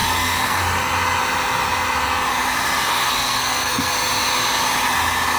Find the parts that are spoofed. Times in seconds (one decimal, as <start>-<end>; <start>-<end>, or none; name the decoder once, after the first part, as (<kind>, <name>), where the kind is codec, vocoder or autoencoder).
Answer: 0.0-0.6 (codec, SNAC); 2.9-3.9